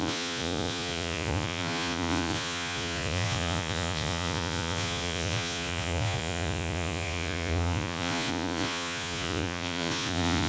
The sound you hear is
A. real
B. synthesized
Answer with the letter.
B